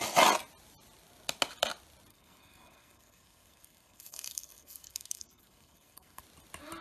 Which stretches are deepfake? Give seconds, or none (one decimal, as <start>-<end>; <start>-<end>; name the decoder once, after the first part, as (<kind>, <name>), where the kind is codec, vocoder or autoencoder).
2.1-6.2 (codec, SNAC)